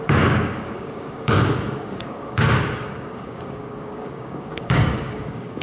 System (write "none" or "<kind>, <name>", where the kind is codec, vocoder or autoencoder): codec, DAC